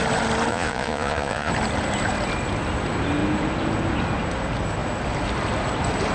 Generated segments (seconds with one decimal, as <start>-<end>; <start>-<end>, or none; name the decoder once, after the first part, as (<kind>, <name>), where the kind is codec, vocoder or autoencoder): 0.5-1.5 (vocoder, Vocos)